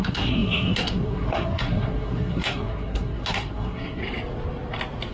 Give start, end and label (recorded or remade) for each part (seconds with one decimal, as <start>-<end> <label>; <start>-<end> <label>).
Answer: 0.0-4.0 remade; 4.0-5.1 recorded